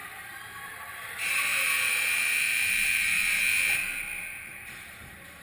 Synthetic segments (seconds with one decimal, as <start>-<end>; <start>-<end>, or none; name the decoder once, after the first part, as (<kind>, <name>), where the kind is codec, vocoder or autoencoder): 0.0-3.9 (vocoder, BigVGAN v2); 4.5-5.4